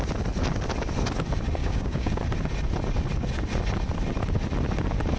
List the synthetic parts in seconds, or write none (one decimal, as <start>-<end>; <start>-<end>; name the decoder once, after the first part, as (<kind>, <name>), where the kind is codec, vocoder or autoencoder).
1.6-2.2 (codec, DAC)